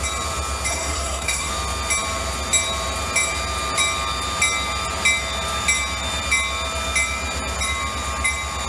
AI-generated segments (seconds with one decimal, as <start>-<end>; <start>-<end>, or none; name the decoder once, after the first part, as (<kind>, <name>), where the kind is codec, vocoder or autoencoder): 0.7-1.5 (codec, SNAC)